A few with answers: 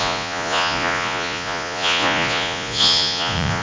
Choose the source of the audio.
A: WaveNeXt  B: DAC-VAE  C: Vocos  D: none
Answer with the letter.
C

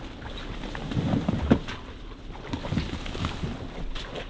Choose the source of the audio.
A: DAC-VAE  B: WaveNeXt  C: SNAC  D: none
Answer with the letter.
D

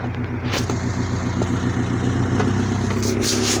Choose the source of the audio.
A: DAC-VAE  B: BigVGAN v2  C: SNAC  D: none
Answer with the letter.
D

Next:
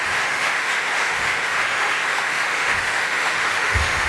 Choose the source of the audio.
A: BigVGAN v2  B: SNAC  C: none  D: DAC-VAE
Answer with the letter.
D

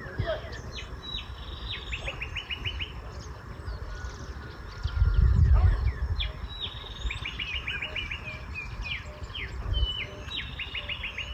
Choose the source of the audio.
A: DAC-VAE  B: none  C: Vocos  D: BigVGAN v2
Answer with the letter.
B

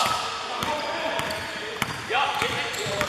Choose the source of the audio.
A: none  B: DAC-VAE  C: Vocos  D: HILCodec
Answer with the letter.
A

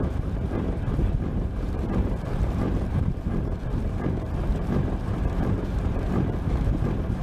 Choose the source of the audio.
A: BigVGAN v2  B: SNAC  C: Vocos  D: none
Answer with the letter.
A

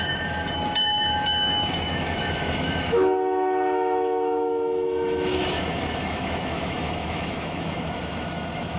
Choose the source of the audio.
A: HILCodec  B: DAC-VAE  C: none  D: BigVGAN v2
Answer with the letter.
B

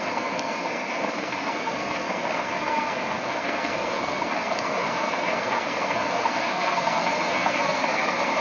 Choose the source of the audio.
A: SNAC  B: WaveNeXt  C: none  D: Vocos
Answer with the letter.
A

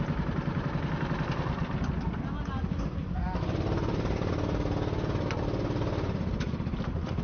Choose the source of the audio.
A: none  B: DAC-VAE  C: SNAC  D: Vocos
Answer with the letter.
A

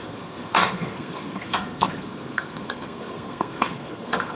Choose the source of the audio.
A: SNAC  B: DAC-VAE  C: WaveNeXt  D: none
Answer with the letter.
A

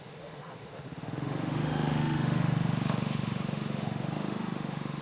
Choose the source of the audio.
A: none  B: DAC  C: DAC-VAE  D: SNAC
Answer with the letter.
C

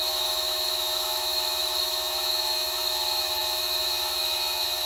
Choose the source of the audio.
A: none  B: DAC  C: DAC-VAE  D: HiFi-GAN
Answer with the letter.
C